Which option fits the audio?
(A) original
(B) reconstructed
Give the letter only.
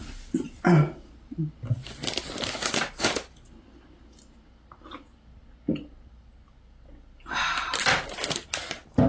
A